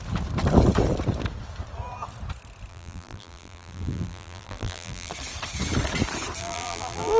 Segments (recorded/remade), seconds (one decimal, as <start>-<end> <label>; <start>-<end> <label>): 0.0-2.7 recorded; 2.7-5.1 remade; 5.1-6.4 recorded; 6.4-7.2 remade